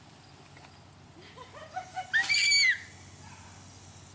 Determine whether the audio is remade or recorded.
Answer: recorded